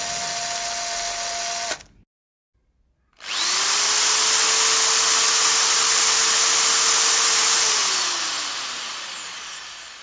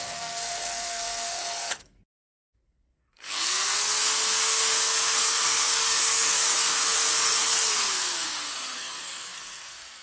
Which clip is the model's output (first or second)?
second